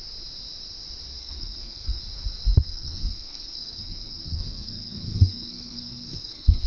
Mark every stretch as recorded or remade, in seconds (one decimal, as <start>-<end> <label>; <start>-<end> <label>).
0.0-1.2 recorded; 1.2-2.0 remade; 2.0-2.5 recorded; 2.5-6.7 remade